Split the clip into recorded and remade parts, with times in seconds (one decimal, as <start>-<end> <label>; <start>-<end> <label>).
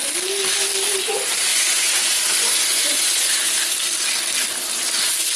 0.0-1.5 recorded; 1.5-3.5 remade; 3.5-5.4 recorded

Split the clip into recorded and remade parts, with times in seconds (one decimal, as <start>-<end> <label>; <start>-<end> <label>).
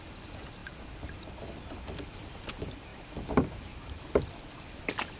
0.0-5.2 recorded